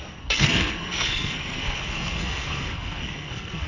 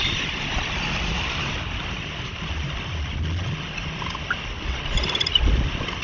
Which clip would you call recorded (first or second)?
second